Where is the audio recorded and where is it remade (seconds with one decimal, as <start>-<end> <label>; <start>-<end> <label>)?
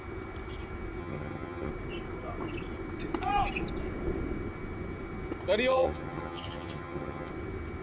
0.0-1.0 recorded; 1.0-1.7 remade; 1.7-5.7 recorded; 5.7-7.3 remade; 7.3-7.8 recorded